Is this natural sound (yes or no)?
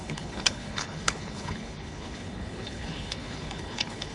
no